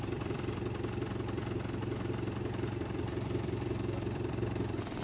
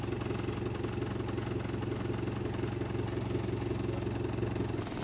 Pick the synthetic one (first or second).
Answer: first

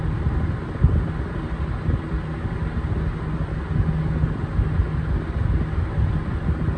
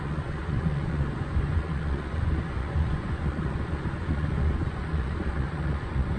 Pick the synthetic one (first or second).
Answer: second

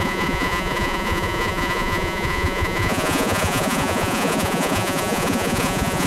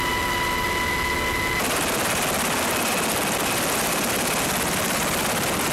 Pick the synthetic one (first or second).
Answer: first